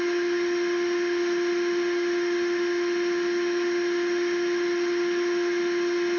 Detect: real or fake real